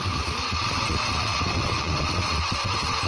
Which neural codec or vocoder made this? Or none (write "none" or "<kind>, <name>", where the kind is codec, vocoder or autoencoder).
vocoder, WaveNeXt